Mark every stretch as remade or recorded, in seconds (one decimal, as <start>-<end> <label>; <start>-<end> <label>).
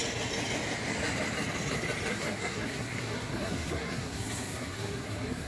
0.0-2.1 recorded; 2.1-5.5 remade